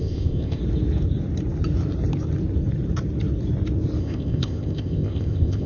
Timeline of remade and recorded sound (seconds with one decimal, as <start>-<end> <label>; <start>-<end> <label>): 0.0-0.6 remade; 0.6-4.0 recorded; 4.0-5.7 remade